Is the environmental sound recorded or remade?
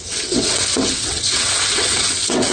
remade